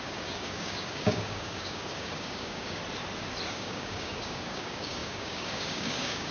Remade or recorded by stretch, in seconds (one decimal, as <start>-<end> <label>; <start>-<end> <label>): 0.0-2.8 remade; 2.8-3.5 recorded; 3.5-6.3 remade